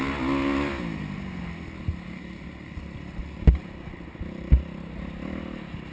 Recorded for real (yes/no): yes